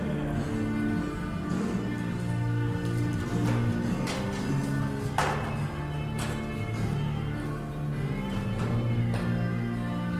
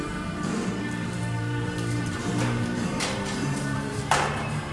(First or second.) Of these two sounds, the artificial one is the second